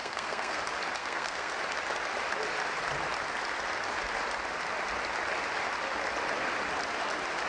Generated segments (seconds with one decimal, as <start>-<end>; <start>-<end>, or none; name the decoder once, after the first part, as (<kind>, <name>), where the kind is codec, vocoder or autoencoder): 0.0-0.6 (codec, SNAC); 1.0-1.5